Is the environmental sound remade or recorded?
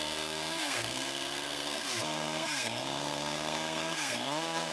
remade